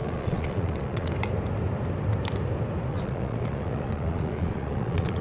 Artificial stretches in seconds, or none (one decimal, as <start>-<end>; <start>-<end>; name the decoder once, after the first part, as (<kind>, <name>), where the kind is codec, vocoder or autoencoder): 0.0-1.1 (vocoder, Vocos); 2.9-5.2